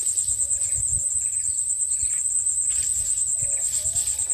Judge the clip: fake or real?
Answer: real